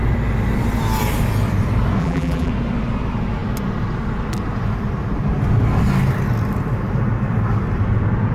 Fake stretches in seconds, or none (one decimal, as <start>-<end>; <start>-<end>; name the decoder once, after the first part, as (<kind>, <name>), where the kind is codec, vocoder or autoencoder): 2.0-2.5 (vocoder, BigVGAN v2)

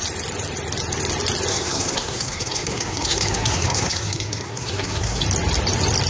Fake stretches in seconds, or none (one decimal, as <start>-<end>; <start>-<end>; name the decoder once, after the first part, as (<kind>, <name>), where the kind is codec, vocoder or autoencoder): 1.5-5.2 (codec, SNAC)

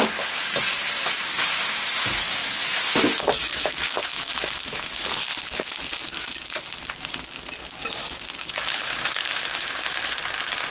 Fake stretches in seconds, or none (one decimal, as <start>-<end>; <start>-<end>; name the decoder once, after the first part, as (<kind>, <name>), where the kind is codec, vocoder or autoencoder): 2.4-5.4 (autoencoder, DAC-VAE); 8.0-10.1

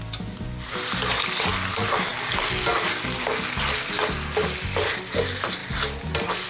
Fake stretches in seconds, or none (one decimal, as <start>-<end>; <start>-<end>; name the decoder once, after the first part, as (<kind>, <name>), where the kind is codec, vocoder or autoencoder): none